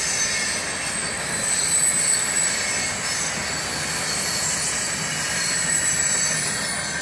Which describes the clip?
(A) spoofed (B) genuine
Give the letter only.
B